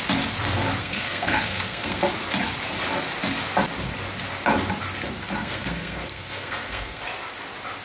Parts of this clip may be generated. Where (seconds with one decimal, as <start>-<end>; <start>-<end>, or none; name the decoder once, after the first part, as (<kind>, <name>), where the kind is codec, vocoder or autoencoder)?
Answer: 0.8-2.0 (codec, SNAC); 5.4-7.0